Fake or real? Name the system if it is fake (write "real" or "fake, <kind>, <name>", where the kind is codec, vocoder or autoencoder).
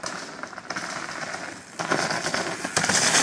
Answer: real